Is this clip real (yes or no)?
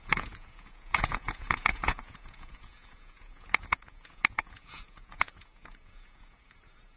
no